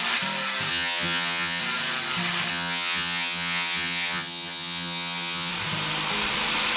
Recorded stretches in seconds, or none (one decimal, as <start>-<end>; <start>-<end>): 0.0-0.7; 1.6-2.5; 5.5-6.8